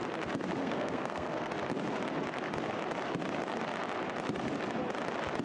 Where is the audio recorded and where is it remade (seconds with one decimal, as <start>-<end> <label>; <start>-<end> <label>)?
0.0-0.6 recorded; 0.6-1.5 remade; 1.5-5.4 recorded